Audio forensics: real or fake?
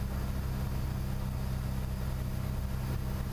real